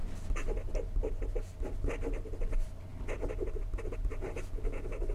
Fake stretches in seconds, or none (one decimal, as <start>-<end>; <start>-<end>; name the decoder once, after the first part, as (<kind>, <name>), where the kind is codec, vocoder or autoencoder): none